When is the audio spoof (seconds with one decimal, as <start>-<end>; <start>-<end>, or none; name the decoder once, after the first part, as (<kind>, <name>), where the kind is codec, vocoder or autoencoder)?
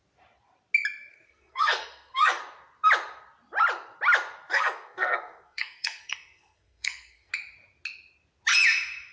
1.1-2.4 (codec, SNAC); 4.5-7.3